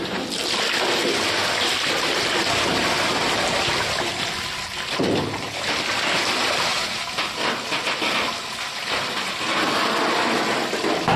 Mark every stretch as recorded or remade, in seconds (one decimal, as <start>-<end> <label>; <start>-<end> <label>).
0.0-11.2 recorded